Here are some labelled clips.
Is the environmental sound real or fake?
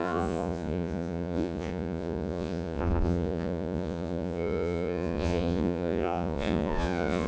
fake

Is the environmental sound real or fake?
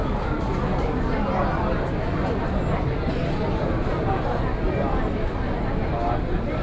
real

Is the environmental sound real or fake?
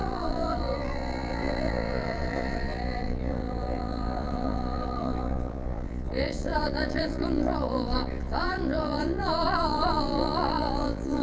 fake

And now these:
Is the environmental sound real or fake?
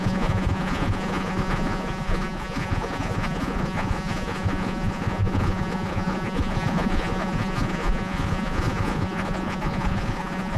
fake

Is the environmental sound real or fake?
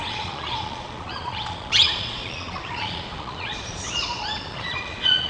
fake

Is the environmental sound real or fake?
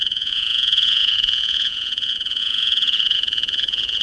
fake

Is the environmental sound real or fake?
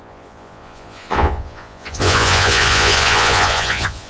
fake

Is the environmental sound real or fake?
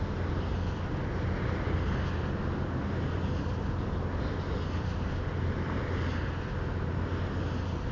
real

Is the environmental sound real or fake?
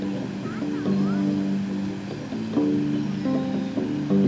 real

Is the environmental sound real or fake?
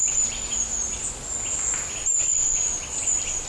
real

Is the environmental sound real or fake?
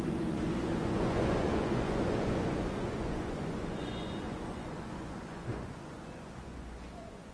fake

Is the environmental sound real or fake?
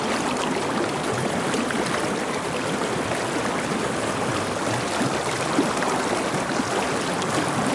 real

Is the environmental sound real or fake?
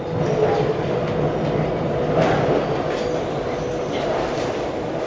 real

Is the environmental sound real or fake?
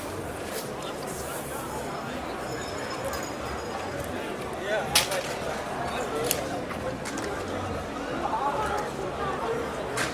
real